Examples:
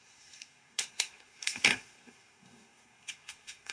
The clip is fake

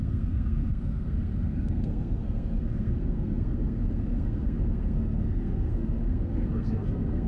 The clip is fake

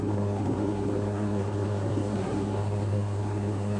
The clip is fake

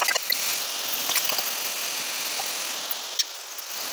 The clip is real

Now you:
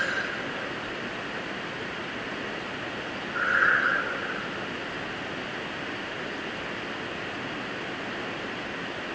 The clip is real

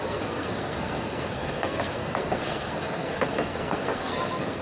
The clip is fake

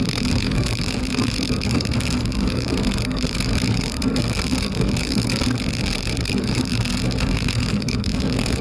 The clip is fake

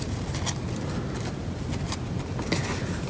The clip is real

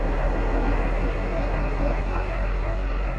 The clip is fake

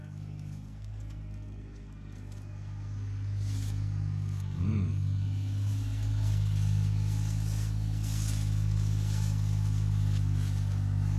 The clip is fake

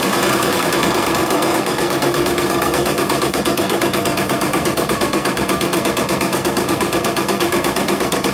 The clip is fake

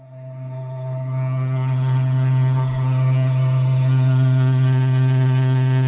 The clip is fake